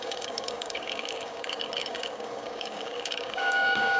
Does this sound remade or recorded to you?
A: remade